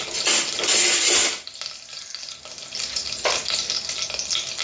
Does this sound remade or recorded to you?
recorded